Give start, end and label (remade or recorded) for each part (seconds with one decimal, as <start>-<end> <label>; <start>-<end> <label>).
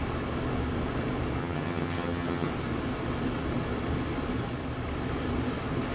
0.0-1.4 recorded; 1.4-2.5 remade; 2.5-5.9 recorded